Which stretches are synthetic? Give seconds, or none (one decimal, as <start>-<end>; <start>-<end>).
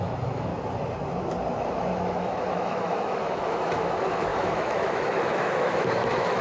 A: 0.0-0.5; 1.9-6.4